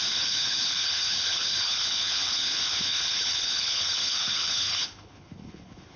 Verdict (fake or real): fake